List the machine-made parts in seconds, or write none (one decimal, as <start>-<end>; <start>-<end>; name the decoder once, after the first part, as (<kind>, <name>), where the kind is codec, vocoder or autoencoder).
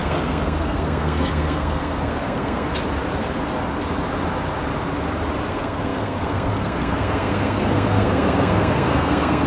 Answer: 0.0-2.7 (codec, SNAC); 5.5-9.5